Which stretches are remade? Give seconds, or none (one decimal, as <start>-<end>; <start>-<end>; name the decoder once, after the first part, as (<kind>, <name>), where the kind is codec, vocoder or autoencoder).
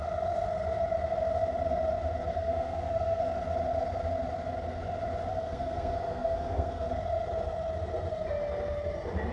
2.3-3.2 (codec, SNAC); 5.3-6.9